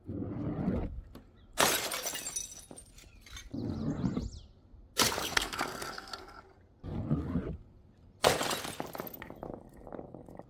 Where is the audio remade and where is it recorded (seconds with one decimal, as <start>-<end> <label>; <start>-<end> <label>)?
0.0-5.2 recorded; 5.2-6.4 remade; 6.4-10.5 recorded